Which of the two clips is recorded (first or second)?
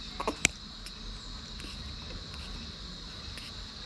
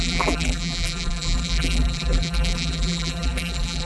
first